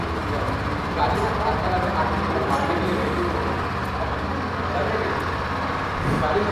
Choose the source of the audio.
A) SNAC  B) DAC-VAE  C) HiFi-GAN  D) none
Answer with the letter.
D